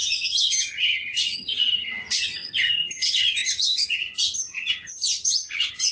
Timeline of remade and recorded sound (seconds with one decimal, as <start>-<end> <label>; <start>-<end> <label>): 0.0-5.9 remade